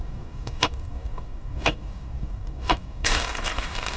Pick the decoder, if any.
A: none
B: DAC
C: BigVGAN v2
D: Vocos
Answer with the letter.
B